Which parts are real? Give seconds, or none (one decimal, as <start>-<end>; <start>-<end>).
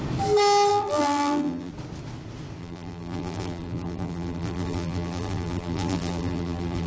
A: 0.0-0.7; 1.7-2.6